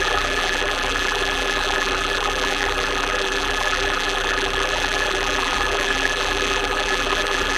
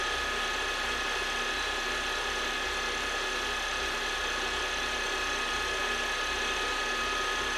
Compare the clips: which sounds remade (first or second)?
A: first